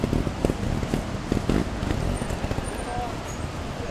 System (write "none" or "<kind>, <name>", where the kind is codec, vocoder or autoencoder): none